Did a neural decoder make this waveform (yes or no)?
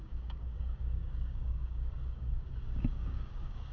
yes